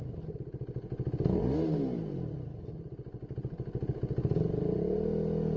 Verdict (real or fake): real